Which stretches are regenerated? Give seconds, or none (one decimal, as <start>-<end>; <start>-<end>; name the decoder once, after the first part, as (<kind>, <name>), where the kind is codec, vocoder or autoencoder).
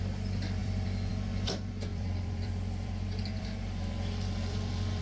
0.6-1.1 (vocoder, BigVGAN v2); 1.9-5.0